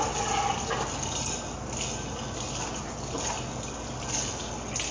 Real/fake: real